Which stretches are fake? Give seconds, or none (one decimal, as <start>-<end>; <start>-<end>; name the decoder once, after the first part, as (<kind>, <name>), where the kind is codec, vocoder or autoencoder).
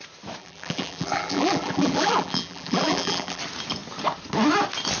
0.4-3.4 (vocoder, BigVGAN v2)